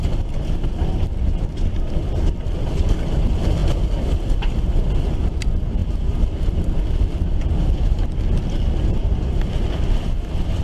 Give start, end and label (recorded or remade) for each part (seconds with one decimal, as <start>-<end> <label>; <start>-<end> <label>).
0.0-10.6 recorded